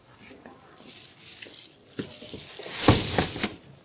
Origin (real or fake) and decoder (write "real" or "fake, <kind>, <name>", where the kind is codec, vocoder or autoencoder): real